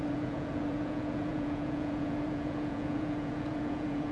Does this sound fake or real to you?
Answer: fake